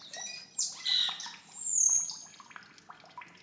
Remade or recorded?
recorded